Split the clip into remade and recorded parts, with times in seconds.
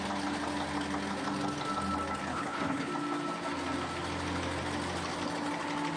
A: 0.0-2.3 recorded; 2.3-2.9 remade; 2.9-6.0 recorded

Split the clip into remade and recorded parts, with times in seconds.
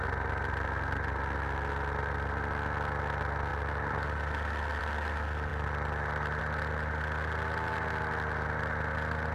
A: 0.0-9.3 recorded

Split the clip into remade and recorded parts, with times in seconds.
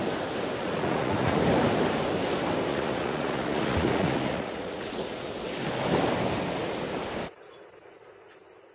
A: 0.0-0.6 recorded; 0.6-1.4 remade; 1.4-2.7 recorded; 2.7-5.3 remade; 5.3-8.7 recorded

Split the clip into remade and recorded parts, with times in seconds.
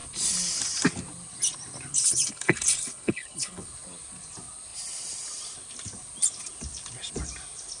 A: 0.0-1.9 recorded; 1.9-3.7 remade; 3.7-7.8 recorded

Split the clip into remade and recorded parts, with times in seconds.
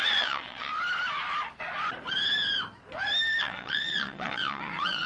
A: 0.0-0.7 remade; 0.7-3.4 recorded; 3.4-5.1 remade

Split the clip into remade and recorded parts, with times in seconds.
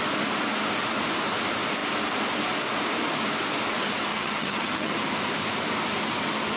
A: 0.0-4.1 recorded; 4.1-4.9 remade; 4.9-6.6 recorded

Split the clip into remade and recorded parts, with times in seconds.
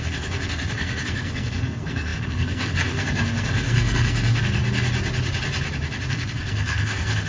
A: 0.0-4.6 remade; 4.6-6.1 recorded; 6.1-7.3 remade